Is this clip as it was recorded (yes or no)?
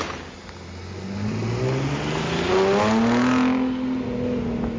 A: yes